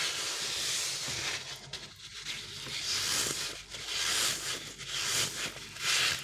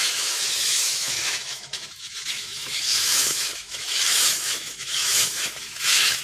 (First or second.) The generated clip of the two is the second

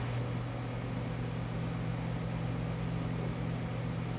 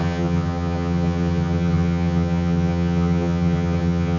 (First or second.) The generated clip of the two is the second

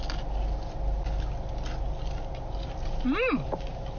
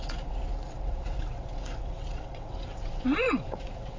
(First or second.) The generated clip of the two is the second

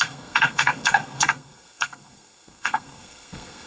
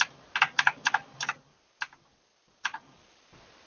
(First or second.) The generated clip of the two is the first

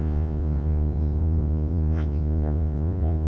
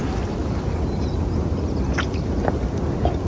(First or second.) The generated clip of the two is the first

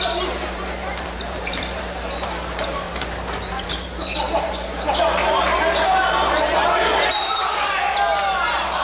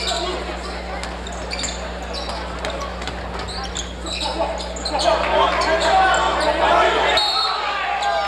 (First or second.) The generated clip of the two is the first